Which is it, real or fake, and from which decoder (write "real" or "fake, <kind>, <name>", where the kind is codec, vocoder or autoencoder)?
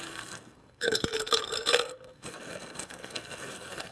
fake, codec, SNAC